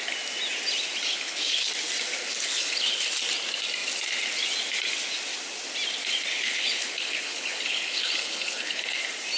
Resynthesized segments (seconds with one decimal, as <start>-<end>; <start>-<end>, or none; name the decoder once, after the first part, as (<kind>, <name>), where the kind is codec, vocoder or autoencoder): 1.1-1.7 (codec, HILCodec); 2.2-3.0; 6.3-9.0